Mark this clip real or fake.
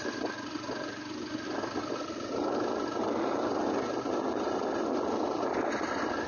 real